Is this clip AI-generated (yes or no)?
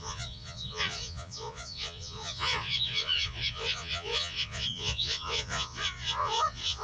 yes